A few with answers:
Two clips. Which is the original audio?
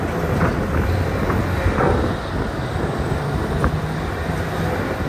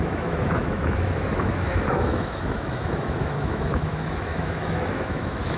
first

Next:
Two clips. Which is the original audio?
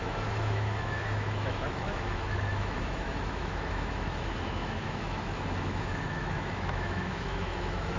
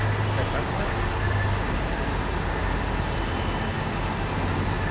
second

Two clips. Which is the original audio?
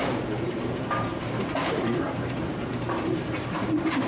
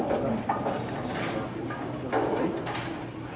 second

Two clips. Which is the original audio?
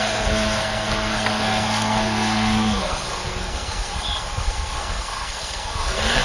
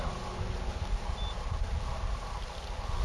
second